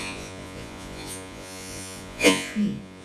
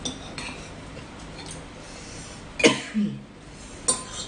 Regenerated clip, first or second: first